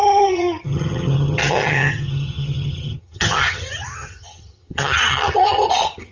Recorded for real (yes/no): no